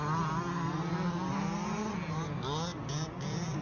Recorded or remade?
recorded